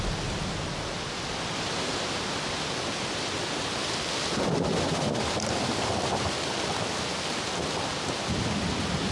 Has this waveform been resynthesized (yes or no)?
no